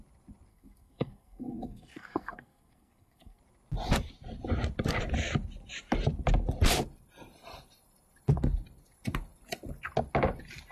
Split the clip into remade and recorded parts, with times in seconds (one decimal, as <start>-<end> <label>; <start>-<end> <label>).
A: 0.0-0.5 recorded; 0.5-3.4 remade; 3.4-10.7 recorded

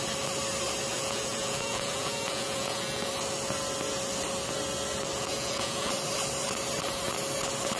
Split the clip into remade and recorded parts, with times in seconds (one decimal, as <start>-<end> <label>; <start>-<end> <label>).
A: 0.0-0.9 recorded; 0.9-3.1 remade; 3.1-5.3 recorded; 5.3-5.9 remade; 5.9-7.8 recorded

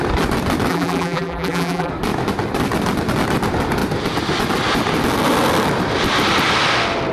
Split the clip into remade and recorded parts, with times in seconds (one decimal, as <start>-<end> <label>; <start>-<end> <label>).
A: 0.0-0.7 recorded; 0.7-1.9 remade; 1.9-7.1 recorded

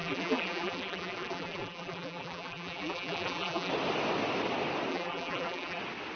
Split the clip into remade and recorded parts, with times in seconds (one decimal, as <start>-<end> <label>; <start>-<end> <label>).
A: 0.0-3.7 remade; 3.7-4.9 recorded; 4.9-5.8 remade; 5.8-6.2 recorded

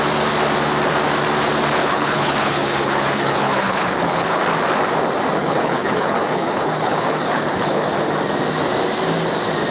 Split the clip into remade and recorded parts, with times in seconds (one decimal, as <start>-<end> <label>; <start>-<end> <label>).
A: 0.0-1.8 recorded; 1.8-4.4 remade; 4.4-5.4 recorded; 5.4-7.9 remade; 7.9-9.7 recorded